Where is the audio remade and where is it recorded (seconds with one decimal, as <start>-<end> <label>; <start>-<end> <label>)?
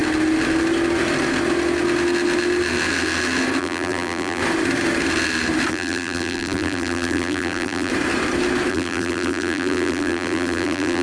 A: 0.0-3.6 recorded; 3.6-4.4 remade; 4.4-5.7 recorded; 5.7-7.9 remade; 7.9-8.7 recorded; 8.7-11.0 remade